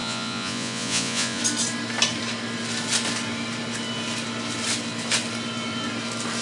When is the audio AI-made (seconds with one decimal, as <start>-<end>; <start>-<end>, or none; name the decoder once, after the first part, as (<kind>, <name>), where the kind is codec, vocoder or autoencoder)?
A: 0.0-1.4 (vocoder, Vocos)